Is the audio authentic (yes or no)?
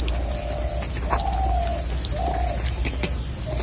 yes